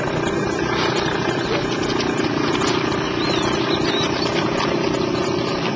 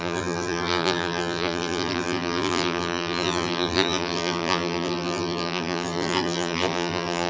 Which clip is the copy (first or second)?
second